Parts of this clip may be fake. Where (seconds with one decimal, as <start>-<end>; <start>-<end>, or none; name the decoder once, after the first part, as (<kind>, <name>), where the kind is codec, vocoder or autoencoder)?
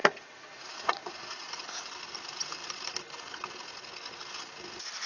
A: 0.0-1.5 (vocoder, Vocos)